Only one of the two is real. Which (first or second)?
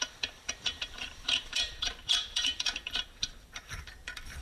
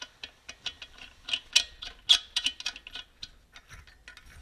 second